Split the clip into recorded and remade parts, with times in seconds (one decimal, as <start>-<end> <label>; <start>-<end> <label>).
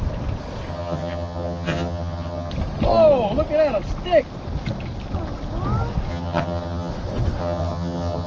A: 0.0-0.7 recorded; 0.7-2.5 remade; 2.5-6.1 recorded; 6.1-6.9 remade; 6.9-7.4 recorded; 7.4-8.3 remade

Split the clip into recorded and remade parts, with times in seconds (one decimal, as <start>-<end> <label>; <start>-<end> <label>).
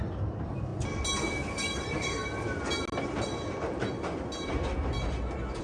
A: 0.0-0.7 remade; 0.7-1.5 recorded; 1.5-2.2 remade; 2.2-5.6 recorded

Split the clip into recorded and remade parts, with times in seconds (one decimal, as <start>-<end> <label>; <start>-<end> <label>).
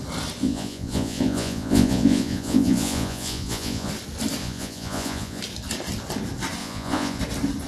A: 0.0-0.4 recorded; 0.4-3.9 remade; 3.9-4.4 recorded; 4.4-5.4 remade; 5.4-6.6 recorded; 6.6-7.2 remade; 7.2-7.7 recorded